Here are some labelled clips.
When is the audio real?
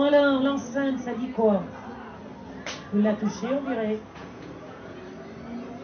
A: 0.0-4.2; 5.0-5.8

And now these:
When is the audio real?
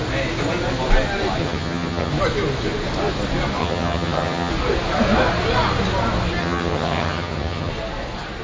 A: 0.0-1.4; 2.1-3.6; 4.5-6.4; 7.7-8.4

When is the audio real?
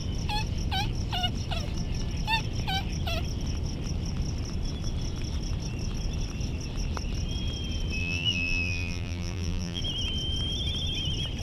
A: 0.0-8.0; 9.8-11.4